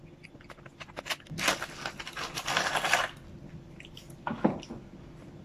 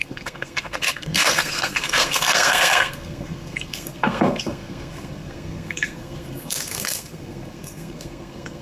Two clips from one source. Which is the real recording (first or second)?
first